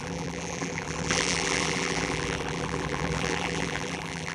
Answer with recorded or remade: remade